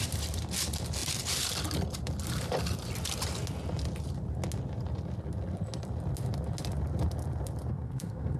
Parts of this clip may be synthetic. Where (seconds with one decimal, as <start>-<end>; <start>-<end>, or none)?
7.7-8.4